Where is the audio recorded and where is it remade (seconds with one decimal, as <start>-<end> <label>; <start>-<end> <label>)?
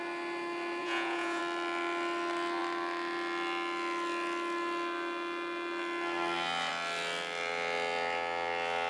0.0-0.8 recorded; 0.8-1.4 remade; 1.4-8.9 recorded